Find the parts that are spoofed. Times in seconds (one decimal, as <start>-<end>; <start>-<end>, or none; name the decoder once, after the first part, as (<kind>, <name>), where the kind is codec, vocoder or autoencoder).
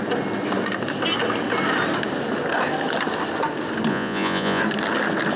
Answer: 3.9-4.6 (vocoder, Vocos)